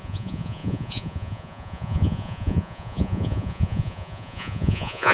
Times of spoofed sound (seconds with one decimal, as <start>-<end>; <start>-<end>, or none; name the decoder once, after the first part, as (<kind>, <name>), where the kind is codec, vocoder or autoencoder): 0.0-5.1 (vocoder, Vocos)